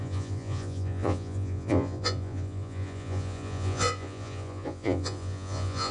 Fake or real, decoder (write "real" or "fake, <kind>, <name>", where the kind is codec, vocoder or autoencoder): fake, vocoder, Vocos